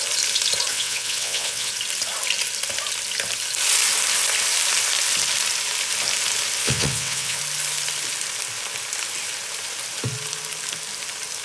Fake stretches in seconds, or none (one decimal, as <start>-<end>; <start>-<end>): 0.7-1.7; 6.6-7.4